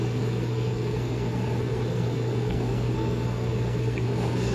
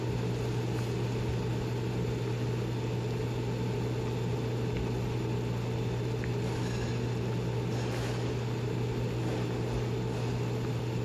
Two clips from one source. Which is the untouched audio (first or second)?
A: second